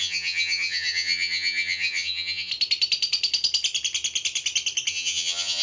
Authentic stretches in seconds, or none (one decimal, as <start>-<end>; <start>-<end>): 2.5-4.9